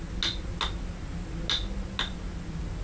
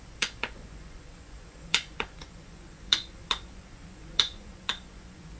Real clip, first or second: first